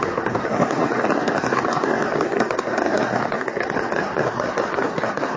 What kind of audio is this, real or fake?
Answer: fake